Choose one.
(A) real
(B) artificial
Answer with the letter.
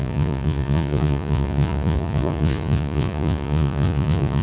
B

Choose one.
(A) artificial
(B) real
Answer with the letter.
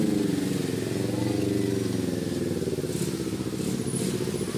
B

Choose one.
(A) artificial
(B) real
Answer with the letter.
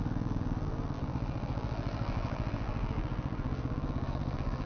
A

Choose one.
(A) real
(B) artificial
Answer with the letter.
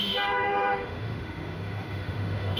B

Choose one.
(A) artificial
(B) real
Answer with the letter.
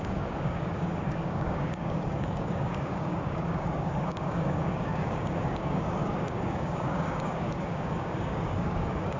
A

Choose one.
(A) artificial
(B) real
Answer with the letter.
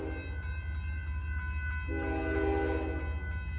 B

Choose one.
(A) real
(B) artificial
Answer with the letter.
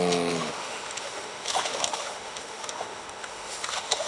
B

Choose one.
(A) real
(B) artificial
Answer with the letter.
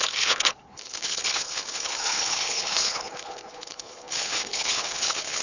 B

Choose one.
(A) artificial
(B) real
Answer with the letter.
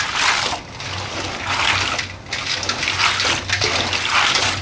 B